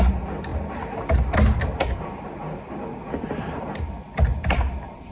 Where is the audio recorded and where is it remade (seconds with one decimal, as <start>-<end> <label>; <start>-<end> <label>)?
0.0-4.3 recorded; 4.3-5.1 remade